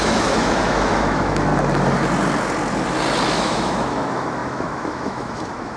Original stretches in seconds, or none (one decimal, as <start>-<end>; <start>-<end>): 1.5-3.3